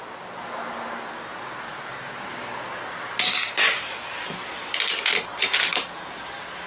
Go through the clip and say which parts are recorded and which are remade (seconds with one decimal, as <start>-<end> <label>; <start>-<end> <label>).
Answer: 0.0-6.7 recorded